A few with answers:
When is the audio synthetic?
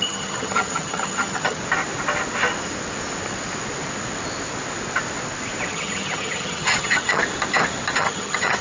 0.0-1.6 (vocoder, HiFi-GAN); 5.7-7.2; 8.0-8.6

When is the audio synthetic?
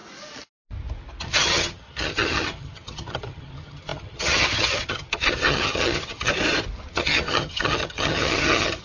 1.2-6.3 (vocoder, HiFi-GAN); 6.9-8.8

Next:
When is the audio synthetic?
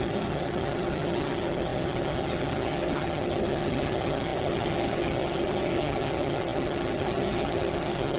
0.0-8.2 (vocoder, HiFi-GAN)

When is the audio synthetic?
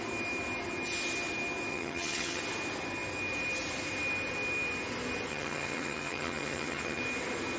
1.7-2.4 (vocoder, HiFi-GAN); 5.3-7.0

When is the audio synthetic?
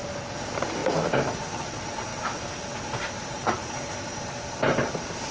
none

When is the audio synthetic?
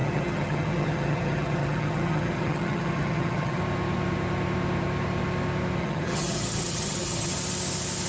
0.0-3.6 (vocoder, HiFi-GAN); 5.8-7.3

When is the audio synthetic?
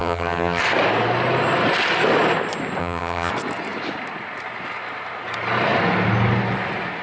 0.0-0.6 (vocoder, HiFi-GAN); 2.8-3.3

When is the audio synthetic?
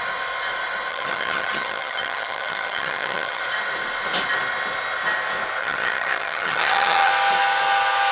0.9-3.4 (vocoder, HiFi-GAN); 5.6-7.1